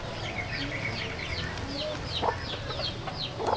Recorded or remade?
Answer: recorded